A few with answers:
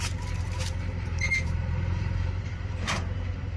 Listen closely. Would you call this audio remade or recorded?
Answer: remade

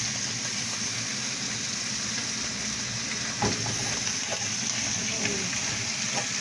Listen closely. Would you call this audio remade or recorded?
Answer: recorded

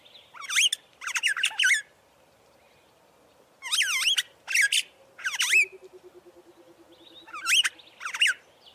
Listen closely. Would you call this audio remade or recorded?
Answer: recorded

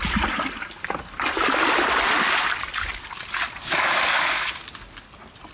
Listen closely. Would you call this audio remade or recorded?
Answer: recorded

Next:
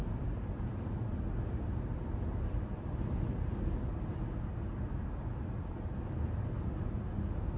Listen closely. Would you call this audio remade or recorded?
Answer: recorded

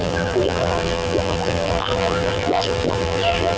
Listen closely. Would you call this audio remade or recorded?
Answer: remade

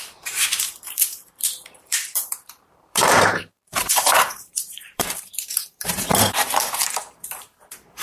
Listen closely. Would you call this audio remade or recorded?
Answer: remade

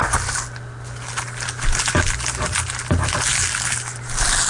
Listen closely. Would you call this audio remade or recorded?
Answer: recorded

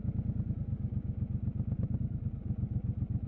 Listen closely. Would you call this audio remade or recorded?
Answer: recorded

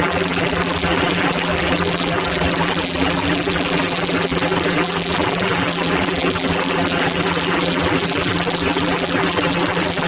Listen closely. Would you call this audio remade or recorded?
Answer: remade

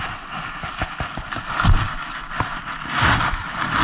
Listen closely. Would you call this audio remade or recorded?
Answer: recorded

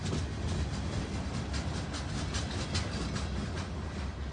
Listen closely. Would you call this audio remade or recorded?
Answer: recorded